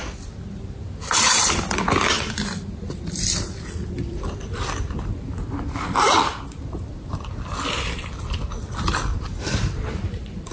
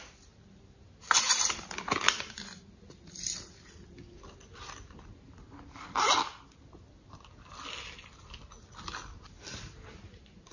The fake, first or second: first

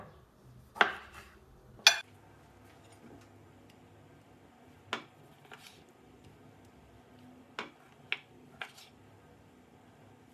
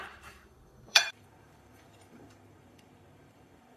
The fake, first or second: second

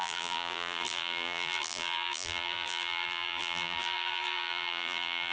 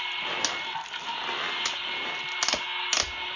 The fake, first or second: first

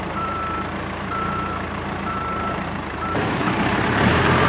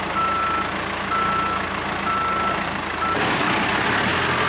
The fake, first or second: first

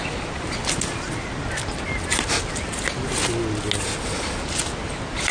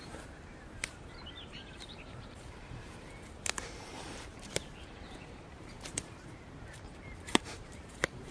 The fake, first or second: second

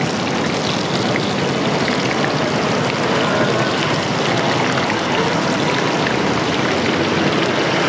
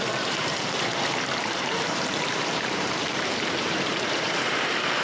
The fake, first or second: second